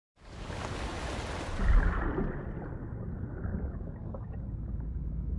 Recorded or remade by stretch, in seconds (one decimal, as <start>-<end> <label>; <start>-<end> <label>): 0.0-1.0 remade; 1.0-3.5 recorded; 3.5-4.4 remade; 4.4-5.4 recorded